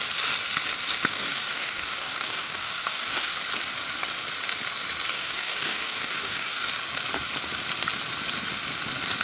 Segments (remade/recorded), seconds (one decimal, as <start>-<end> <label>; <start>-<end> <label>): 0.0-1.1 recorded; 1.1-3.3 remade; 3.3-5.1 recorded; 5.1-6.7 remade; 6.7-9.2 recorded